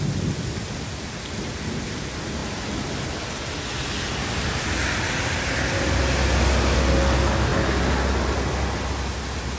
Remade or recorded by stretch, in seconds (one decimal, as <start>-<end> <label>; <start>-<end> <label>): 0.0-9.6 recorded